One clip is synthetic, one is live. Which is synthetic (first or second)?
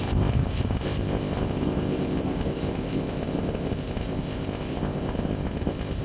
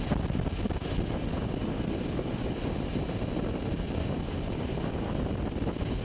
first